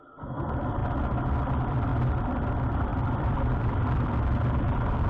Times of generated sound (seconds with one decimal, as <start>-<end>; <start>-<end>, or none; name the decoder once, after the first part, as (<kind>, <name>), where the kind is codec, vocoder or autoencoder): 0.0-0.8 (vocoder, BigVGAN v2); 1.4-1.9; 2.5-5.1